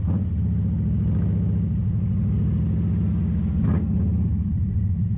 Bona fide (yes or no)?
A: yes